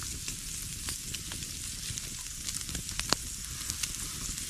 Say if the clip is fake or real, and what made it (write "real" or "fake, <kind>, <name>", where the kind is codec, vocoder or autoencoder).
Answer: real